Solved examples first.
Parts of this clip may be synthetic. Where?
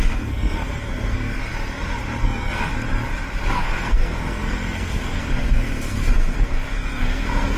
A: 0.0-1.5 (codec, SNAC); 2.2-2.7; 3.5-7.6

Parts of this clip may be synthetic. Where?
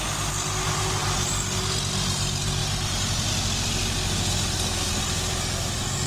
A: none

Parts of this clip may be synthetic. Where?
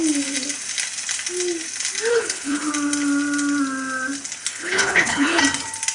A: 2.1-2.7 (codec, HILCodec); 4.5-5.4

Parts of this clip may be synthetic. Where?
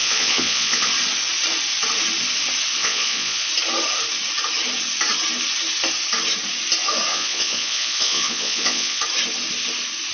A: 0.0-0.9 (vocoder, Vocos); 2.8-3.5; 7.1-9.0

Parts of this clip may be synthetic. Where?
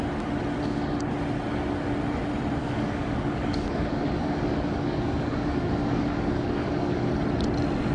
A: 2.6-7.1 (codec, DAC)